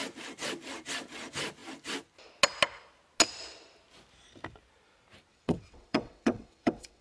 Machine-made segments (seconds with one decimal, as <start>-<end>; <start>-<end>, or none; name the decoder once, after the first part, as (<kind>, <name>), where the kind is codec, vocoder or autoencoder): 5.3-7.0 (vocoder, WaveNeXt)